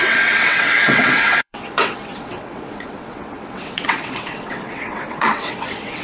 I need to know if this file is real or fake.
fake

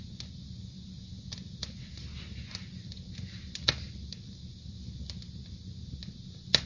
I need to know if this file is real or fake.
real